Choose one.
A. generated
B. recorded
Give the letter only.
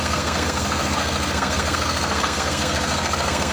A